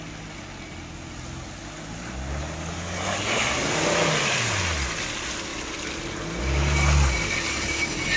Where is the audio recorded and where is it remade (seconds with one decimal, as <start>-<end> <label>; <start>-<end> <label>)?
0.0-8.2 recorded